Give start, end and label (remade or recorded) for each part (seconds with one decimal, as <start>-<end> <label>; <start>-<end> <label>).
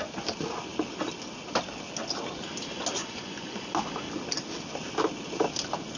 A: 0.0-3.0 recorded; 3.0-3.6 remade; 3.6-6.0 recorded